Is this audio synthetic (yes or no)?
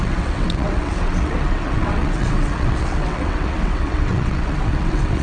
yes